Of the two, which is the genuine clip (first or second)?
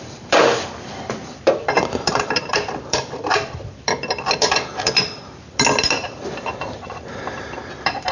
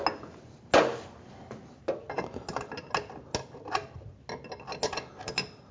second